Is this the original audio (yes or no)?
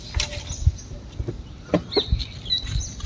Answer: yes